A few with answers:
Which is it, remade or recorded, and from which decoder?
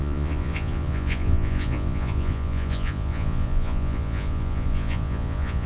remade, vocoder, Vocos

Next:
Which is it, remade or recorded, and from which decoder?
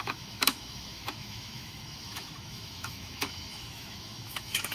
remade, autoencoder, DAC-VAE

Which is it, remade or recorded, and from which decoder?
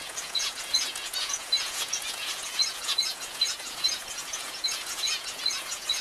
remade, vocoder, Vocos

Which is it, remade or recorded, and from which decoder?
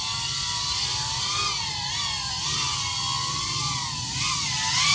recorded